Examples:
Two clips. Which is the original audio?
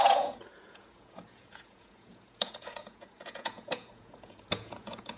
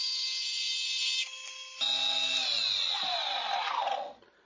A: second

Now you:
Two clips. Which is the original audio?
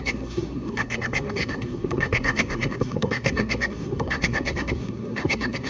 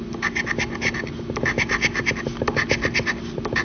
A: second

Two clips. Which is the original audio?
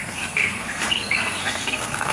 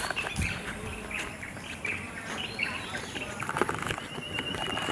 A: second